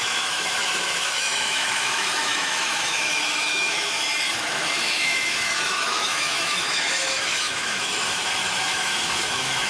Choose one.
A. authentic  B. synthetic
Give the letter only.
B